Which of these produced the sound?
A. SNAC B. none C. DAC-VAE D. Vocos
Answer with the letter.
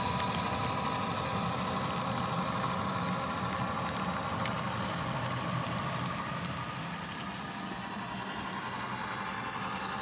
B